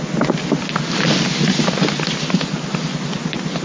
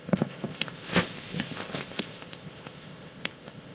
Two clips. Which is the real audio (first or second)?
first